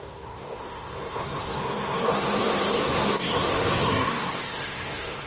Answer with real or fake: fake